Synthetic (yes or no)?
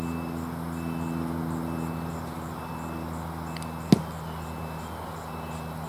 no